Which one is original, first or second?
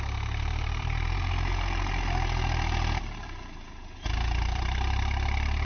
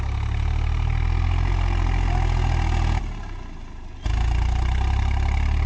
second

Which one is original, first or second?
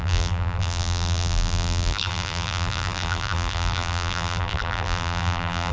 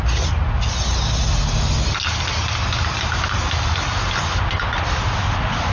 second